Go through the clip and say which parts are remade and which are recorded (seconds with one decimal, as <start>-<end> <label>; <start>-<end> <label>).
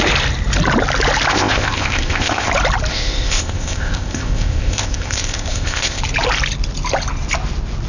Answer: 0.0-1.3 recorded; 1.3-2.5 remade; 2.5-2.9 recorded; 2.9-6.0 remade; 6.0-7.9 recorded